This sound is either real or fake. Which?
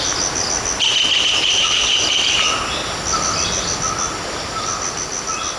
real